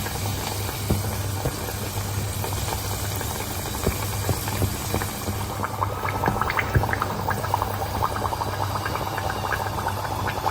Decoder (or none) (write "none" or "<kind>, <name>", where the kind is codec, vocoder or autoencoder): none